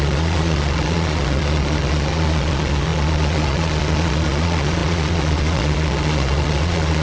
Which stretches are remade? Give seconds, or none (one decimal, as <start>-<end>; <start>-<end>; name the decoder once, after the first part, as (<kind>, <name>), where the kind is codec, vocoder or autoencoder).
0.0-7.0 (vocoder, Vocos)